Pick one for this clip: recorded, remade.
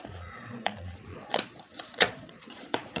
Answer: remade